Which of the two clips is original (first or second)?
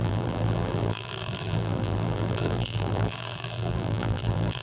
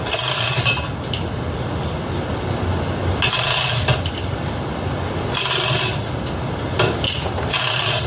second